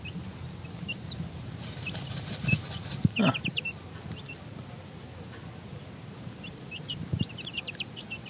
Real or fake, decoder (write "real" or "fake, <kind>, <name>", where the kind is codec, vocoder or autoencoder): fake, vocoder, BigVGAN v2